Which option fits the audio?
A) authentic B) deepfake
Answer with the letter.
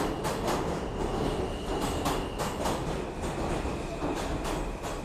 A